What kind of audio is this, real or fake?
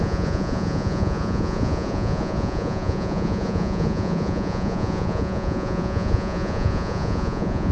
fake